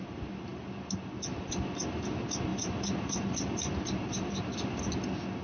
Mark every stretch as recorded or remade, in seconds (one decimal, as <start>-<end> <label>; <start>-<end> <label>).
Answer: 0.0-2.5 recorded; 2.5-4.4 remade; 4.4-5.4 recorded